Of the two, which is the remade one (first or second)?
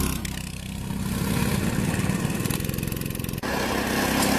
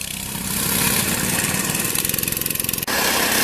second